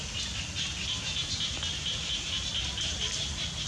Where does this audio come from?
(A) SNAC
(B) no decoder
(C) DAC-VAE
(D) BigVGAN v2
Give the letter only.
B